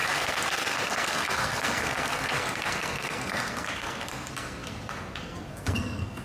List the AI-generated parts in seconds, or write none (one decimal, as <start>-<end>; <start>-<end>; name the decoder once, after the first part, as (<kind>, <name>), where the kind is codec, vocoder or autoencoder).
0.0-6.2 (codec, SNAC)